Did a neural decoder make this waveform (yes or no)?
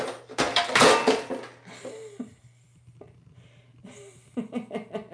no